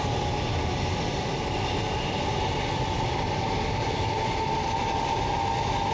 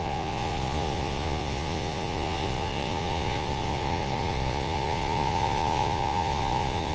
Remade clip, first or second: second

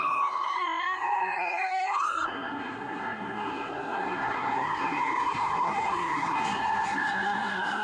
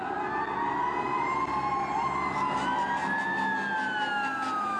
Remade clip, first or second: first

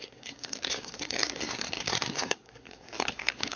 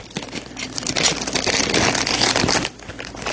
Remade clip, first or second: first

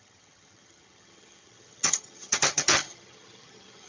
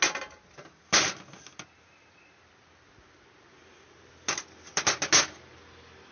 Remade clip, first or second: first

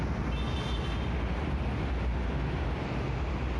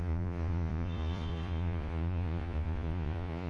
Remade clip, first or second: second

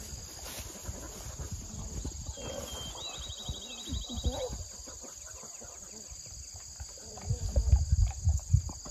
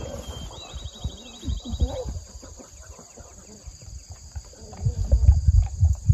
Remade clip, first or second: second